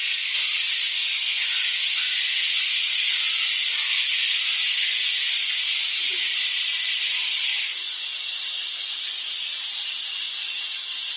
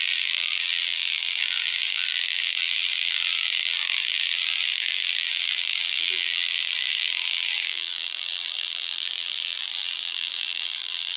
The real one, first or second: first